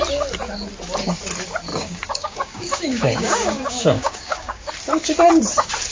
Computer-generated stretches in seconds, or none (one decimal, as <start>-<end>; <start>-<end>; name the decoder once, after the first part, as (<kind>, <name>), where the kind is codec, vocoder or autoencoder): 1.7-4.7 (codec, DAC)